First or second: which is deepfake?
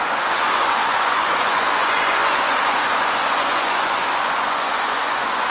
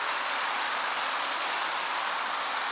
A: first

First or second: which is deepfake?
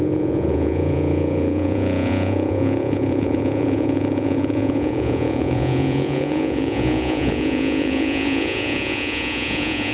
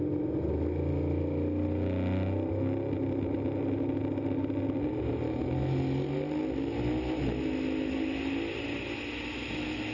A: first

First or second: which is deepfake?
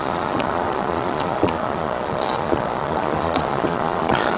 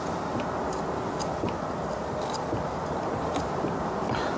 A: first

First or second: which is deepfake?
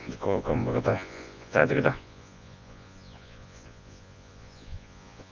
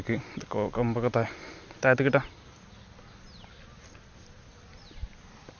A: first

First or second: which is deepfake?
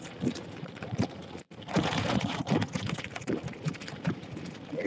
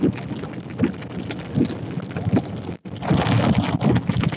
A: first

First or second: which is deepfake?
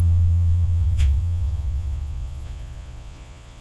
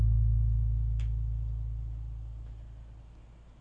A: first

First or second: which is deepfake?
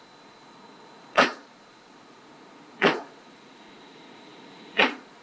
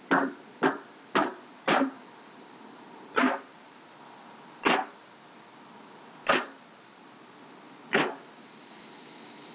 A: first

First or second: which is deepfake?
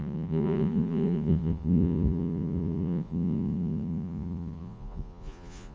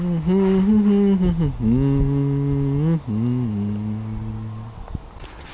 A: first